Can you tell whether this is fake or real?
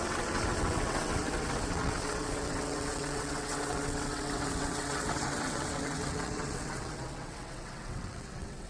fake